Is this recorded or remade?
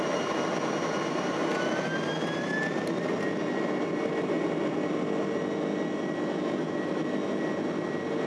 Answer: recorded